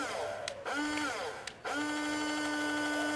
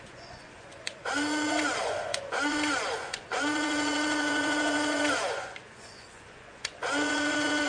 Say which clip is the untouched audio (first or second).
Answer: first